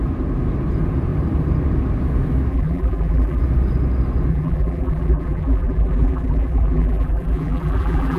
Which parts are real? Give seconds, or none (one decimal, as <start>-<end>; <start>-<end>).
0.0-2.5; 3.4-4.3